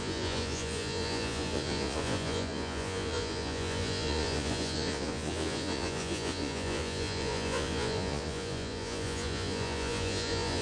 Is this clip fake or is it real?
fake